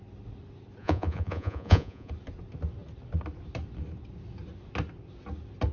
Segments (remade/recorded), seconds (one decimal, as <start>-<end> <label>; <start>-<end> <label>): 0.0-0.8 recorded; 0.8-2.1 remade; 2.1-5.7 recorded

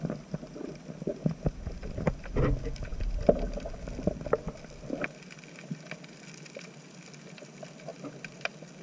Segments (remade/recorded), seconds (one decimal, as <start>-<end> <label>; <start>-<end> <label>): 0.0-8.8 recorded